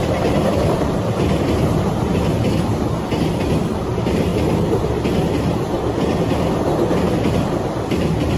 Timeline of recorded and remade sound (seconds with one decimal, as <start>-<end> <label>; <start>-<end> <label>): 0.0-2.7 remade; 2.7-3.6 recorded; 3.6-4.3 remade; 4.3-7.1 recorded; 7.1-8.4 remade